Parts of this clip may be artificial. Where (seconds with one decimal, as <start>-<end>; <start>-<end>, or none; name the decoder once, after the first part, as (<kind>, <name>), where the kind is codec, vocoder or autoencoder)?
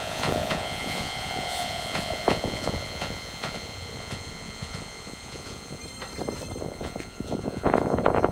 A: 0.0-5.8 (vocoder, Vocos); 6.6-8.3